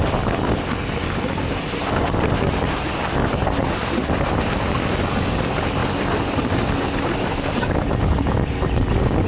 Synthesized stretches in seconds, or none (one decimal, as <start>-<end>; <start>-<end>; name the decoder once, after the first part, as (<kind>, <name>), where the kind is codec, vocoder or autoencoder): none

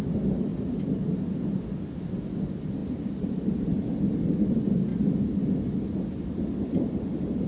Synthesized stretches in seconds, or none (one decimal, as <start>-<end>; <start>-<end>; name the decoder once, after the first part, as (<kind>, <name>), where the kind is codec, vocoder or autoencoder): none

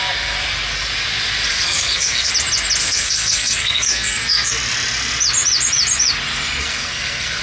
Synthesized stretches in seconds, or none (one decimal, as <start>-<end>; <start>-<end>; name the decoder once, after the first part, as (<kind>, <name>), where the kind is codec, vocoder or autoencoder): 1.5-2.3 (codec, SNAC); 2.8-4.5; 6.6-7.4

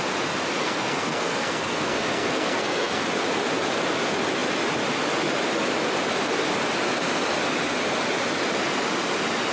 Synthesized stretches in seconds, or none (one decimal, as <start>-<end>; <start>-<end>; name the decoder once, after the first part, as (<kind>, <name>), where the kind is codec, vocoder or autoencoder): 0.6-3.1 (codec, SNAC)